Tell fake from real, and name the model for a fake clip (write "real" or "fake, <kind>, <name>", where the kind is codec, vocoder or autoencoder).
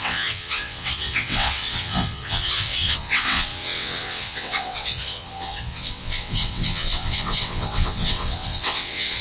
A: fake, vocoder, WaveNeXt